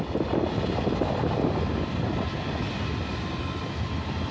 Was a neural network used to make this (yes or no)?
no